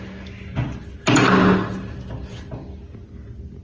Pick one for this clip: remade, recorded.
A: recorded